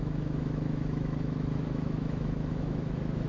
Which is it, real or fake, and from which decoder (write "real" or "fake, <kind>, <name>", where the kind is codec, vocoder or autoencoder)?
fake, autoencoder, DAC-VAE